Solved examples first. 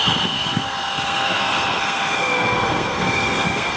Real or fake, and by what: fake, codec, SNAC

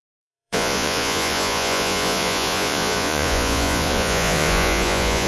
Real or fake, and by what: fake, vocoder, Vocos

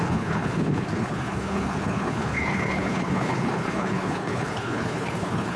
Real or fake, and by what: fake, codec, HILCodec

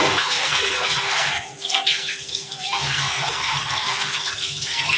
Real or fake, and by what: fake, codec, SNAC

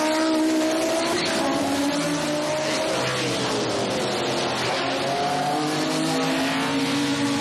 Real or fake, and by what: real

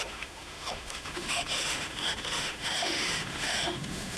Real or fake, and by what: fake, autoencoder, DAC-VAE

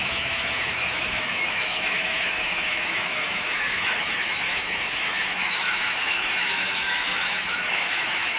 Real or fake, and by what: fake, autoencoder, DAC-VAE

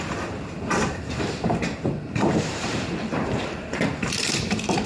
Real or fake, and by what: fake, vocoder, BigVGAN v2